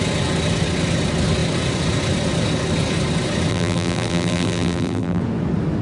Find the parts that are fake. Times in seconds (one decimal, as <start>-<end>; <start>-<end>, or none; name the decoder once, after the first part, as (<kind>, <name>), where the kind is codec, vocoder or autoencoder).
3.5-5.2 (vocoder, BigVGAN v2)